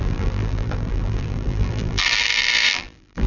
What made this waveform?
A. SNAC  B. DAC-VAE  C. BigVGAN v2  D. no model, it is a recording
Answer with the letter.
C